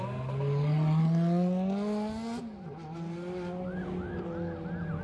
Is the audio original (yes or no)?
yes